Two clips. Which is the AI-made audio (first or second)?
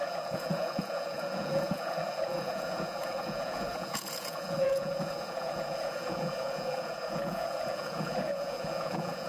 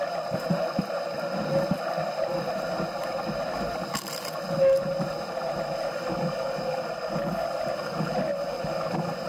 first